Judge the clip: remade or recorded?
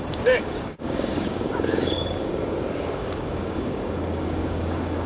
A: remade